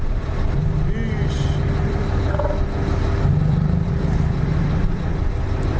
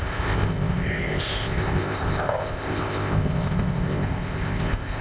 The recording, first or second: first